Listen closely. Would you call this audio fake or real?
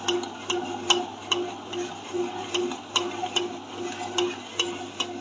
real